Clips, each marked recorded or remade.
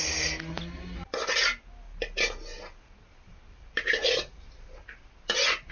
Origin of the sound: recorded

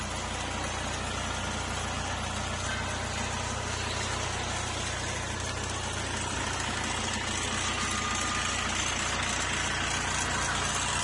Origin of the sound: recorded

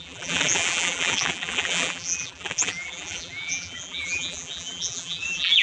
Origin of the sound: remade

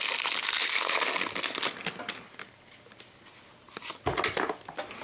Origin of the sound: recorded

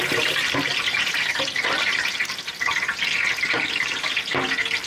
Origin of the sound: remade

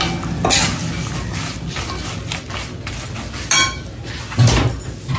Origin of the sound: recorded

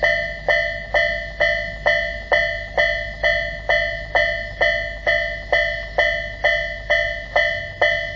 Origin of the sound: recorded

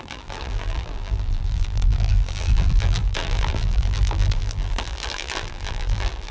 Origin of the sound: remade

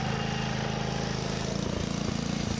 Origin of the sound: recorded